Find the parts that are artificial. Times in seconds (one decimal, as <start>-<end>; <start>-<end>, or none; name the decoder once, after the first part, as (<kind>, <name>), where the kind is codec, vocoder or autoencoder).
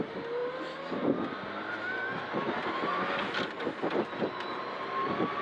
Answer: none